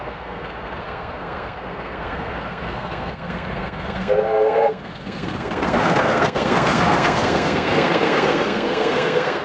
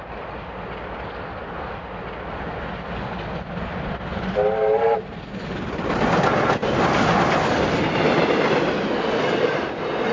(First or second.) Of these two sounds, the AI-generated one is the first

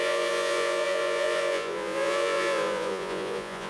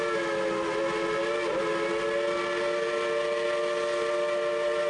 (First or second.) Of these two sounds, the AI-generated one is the first